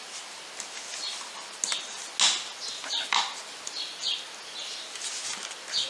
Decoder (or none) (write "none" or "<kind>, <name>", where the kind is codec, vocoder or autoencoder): none